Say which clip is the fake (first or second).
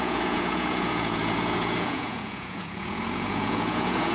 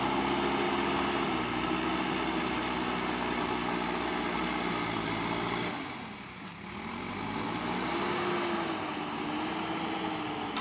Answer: first